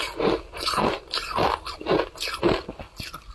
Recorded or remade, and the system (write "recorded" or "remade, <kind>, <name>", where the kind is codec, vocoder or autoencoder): recorded